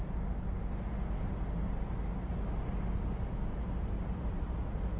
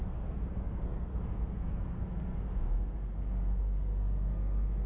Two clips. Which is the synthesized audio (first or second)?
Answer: second